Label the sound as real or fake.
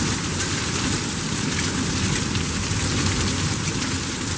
real